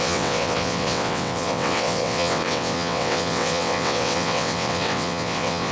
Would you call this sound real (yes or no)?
no